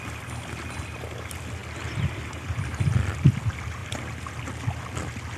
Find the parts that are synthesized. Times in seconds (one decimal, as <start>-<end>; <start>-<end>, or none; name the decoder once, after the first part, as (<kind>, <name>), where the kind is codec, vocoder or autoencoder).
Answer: none